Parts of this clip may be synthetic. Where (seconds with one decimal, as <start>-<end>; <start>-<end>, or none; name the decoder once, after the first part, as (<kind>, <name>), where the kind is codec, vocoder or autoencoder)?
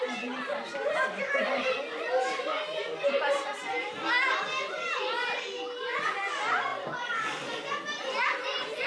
none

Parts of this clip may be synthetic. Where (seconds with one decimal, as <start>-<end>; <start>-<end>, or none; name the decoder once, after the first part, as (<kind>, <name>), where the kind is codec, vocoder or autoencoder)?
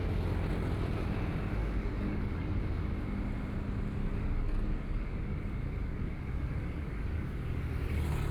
1.6-2.6 (codec, DAC); 4.0-7.6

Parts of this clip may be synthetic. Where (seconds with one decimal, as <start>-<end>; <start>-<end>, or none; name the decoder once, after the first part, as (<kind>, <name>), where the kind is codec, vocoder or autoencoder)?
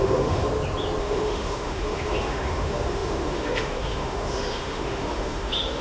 0.0-0.5 (autoencoder, DAC-VAE); 1.0-5.8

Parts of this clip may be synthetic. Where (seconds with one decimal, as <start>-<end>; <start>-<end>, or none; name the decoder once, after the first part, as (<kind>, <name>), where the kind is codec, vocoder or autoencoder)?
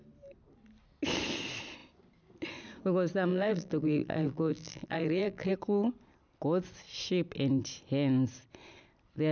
3.3-5.5 (vocoder, BigVGAN v2)